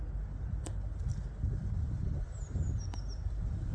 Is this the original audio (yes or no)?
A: yes